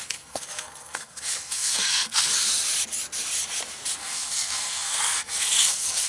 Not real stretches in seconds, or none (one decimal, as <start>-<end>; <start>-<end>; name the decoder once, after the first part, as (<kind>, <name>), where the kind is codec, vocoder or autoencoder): 0.0-2.3 (codec, SNAC); 4.0-6.1